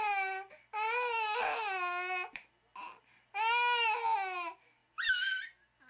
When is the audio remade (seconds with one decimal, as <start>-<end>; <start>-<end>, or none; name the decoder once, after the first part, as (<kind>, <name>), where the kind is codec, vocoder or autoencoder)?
none

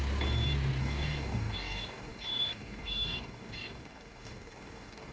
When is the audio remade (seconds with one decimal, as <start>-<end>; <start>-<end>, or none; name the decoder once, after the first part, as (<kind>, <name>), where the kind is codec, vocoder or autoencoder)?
0.8-5.1 (codec, DAC)

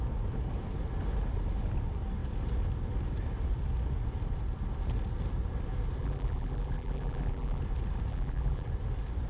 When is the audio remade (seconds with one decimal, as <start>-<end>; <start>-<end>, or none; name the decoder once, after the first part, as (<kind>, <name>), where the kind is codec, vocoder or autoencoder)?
6.0-7.6 (vocoder, BigVGAN v2); 8.1-8.7

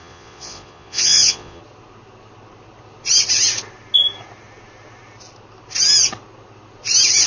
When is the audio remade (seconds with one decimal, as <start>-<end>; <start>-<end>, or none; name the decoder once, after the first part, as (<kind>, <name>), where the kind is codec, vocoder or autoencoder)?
0.0-1.6 (vocoder, Vocos)

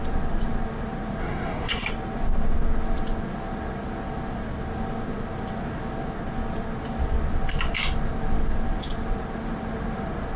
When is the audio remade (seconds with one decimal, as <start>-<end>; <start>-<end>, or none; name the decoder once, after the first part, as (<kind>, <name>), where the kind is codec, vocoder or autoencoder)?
1.2-1.8 (codec, SNAC)